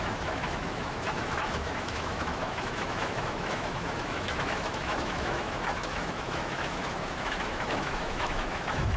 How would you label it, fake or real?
fake